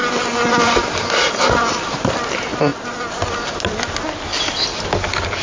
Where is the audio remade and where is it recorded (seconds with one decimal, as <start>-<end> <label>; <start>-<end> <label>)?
0.0-5.4 recorded